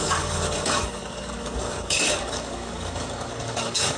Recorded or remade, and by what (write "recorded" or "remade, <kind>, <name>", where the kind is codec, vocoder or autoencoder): remade, codec, DAC